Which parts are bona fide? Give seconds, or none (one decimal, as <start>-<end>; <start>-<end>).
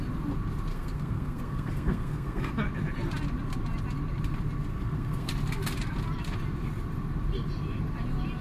0.0-0.7; 2.5-4.7; 5.3-8.4